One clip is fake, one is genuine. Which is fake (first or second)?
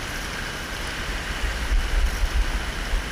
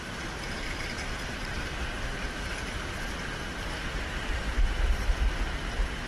second